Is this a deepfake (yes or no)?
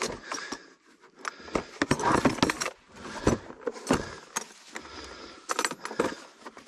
no